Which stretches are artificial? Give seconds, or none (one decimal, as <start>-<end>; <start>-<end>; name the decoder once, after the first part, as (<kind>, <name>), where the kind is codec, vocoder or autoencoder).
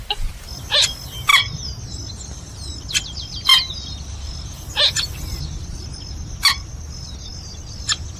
none